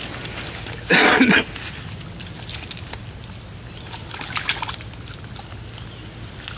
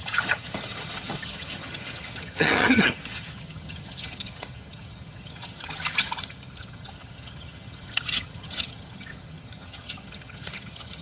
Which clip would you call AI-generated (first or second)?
second